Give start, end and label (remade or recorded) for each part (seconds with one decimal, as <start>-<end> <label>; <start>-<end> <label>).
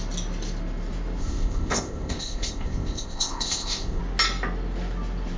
0.0-1.2 recorded; 1.2-4.0 remade; 4.0-5.4 recorded